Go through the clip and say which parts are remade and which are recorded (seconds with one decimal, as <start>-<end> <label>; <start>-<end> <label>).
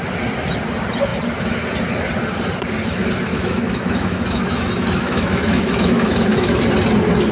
0.0-3.3 recorded; 3.3-6.6 remade; 6.6-7.3 recorded